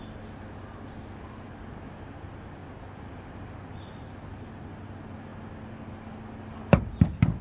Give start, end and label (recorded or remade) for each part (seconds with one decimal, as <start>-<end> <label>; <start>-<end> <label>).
0.0-7.4 recorded